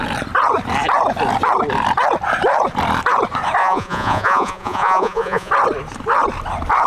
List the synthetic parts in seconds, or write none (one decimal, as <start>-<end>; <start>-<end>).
3.6-5.5